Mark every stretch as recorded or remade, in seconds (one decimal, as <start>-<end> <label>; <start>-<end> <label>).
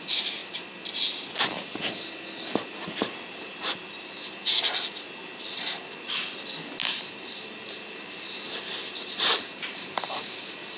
0.0-3.0 recorded; 3.0-3.7 remade; 3.7-6.8 recorded; 6.8-10.8 remade